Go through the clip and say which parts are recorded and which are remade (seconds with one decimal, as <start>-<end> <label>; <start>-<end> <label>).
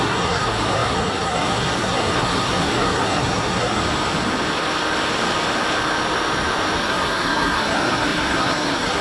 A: 0.0-3.8 remade; 3.8-6.8 recorded; 6.8-9.0 remade